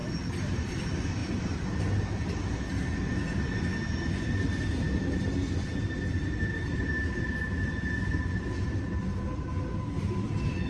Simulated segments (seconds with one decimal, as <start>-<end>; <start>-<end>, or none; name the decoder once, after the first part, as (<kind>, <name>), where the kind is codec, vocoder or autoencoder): none